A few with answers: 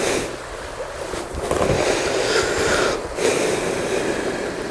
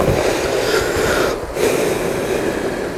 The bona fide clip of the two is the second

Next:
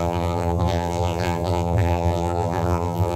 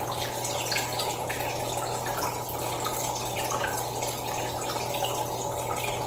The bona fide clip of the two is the second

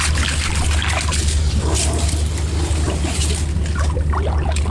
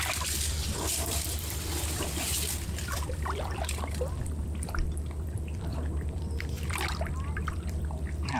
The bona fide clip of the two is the first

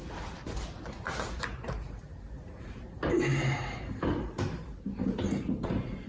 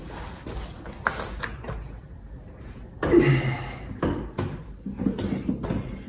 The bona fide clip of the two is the second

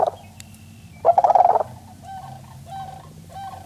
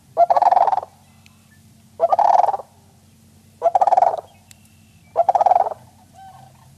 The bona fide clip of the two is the second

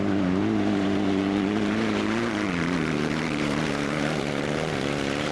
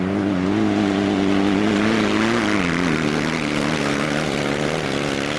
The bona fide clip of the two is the second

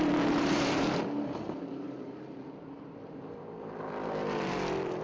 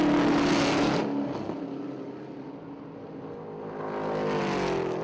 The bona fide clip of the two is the second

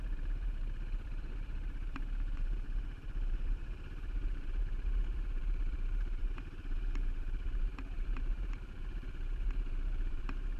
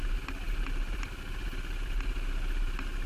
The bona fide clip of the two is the second